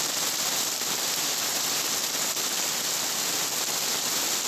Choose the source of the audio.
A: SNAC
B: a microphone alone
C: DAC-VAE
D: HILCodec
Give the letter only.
B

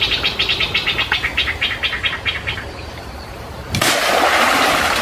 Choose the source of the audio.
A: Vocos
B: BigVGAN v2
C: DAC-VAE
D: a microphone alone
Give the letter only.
D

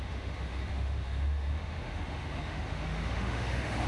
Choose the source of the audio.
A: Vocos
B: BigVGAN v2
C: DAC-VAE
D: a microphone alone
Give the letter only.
C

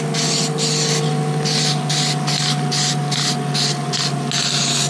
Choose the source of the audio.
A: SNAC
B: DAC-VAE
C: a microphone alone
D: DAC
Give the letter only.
C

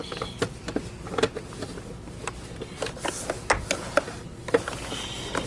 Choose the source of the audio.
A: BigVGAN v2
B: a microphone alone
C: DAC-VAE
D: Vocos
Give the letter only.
B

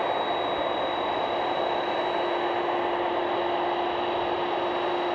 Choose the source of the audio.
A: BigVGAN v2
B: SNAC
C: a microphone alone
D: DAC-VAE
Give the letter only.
C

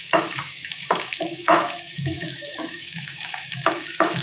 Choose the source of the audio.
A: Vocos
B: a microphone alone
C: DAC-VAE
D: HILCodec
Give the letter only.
C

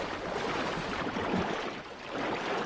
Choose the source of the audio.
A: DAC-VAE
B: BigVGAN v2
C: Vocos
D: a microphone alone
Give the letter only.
D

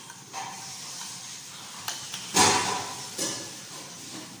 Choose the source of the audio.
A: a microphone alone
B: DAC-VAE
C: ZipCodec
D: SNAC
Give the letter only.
A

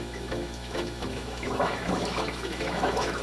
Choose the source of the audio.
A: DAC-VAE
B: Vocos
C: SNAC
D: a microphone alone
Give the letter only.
A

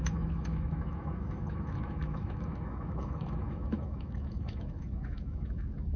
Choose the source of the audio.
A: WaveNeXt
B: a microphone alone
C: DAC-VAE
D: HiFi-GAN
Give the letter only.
C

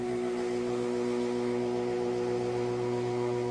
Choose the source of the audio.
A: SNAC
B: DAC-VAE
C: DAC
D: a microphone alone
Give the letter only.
B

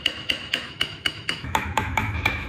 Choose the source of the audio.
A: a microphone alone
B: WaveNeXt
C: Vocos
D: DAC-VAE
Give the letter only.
D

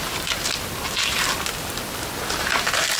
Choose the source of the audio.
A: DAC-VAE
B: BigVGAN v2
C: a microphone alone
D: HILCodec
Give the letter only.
C